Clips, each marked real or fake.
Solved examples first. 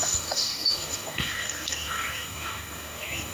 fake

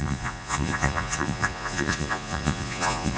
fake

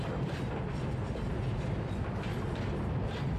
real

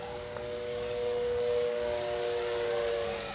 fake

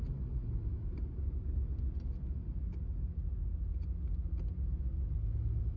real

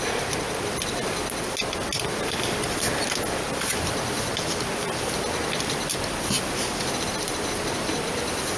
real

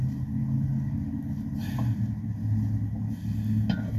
real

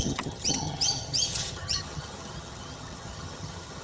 fake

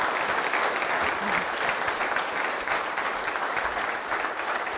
real